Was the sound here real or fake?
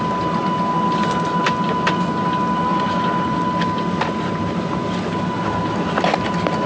real